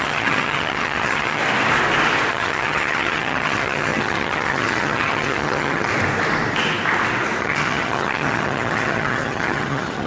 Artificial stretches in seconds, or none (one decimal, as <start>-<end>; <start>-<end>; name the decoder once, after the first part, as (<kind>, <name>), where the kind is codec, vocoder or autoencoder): 0.0-1.4 (vocoder, HiFi-GAN); 2.3-5.9; 7.4-10.1

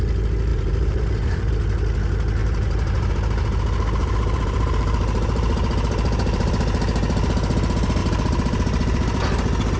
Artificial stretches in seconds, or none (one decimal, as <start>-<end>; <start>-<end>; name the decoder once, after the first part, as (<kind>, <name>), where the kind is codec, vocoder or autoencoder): 0.5-1.5 (vocoder, BigVGAN v2); 2.4-3.1; 4.0-6.5; 8.0-9.2

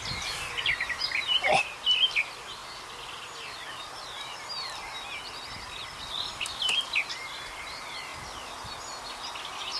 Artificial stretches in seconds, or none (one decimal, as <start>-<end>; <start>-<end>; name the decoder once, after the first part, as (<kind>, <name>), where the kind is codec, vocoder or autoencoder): none